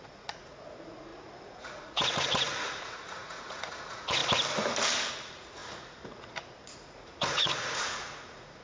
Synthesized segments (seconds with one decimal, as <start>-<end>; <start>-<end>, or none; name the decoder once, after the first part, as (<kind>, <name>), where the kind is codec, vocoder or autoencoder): 0.0-4.2 (vocoder, Vocos); 5.1-8.6